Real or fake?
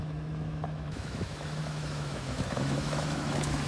fake